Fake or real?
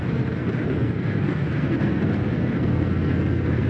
fake